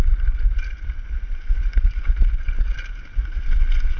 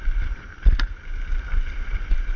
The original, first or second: first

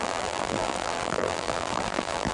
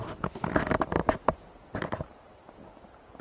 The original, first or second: second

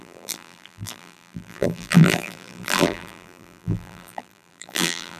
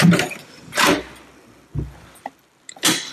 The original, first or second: second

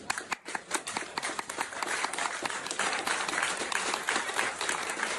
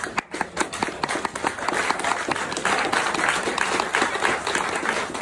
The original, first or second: second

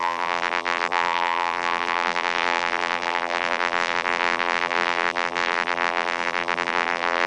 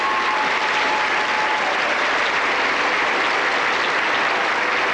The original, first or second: second